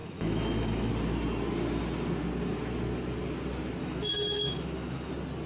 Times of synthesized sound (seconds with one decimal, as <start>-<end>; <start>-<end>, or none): 0.0-0.9; 3.8-5.1